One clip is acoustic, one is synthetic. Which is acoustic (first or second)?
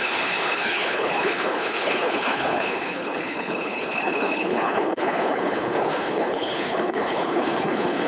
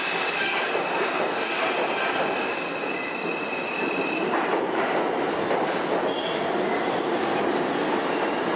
second